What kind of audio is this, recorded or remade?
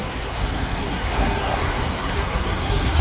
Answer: remade